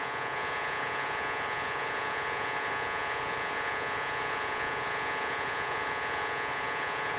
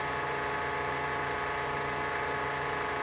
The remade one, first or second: first